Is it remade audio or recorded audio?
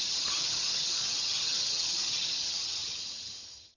remade